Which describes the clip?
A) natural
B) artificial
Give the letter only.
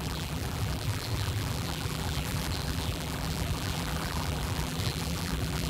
B